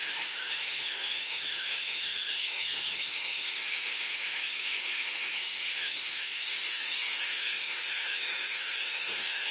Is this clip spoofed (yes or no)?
yes